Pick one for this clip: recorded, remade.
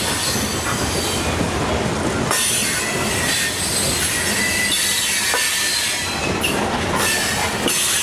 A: recorded